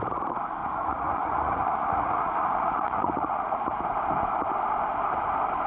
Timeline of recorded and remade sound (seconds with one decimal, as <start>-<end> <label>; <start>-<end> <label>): 0.0-0.6 recorded; 0.6-3.8 remade; 3.8-5.7 recorded